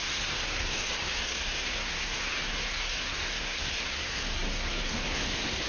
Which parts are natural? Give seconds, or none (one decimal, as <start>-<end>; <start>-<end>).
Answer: none